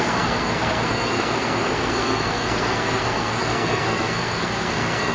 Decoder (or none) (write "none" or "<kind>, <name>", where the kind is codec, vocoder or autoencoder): codec, SNAC